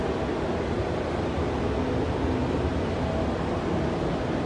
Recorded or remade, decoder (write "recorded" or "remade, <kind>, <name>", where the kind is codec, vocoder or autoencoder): recorded